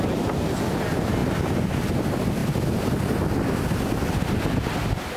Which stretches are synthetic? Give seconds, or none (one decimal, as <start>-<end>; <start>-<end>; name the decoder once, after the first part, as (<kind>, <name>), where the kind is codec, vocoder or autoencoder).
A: none